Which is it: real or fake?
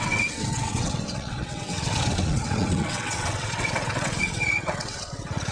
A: fake